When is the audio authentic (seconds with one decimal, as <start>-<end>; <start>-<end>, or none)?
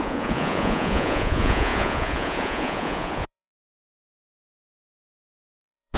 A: none